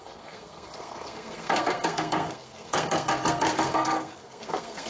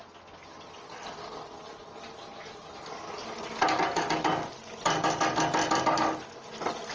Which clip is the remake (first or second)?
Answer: first